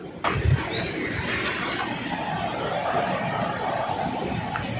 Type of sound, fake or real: real